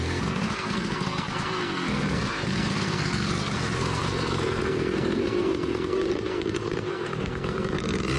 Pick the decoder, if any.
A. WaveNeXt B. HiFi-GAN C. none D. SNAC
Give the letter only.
D